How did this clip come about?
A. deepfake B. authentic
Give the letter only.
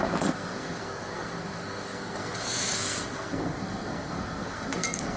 A